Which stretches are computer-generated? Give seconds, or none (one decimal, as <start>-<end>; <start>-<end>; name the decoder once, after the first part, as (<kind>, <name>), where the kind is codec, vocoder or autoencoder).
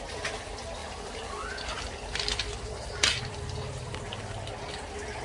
0.8-3.9 (vocoder, BigVGAN v2)